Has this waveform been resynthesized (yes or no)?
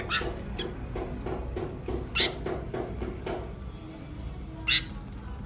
no